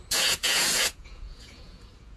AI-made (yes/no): yes